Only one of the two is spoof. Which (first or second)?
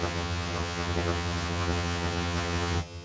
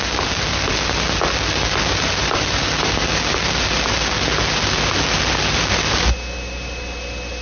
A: first